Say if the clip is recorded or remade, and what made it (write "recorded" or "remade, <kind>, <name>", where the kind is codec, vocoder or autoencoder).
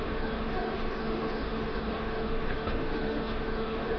remade, autoencoder, DAC-VAE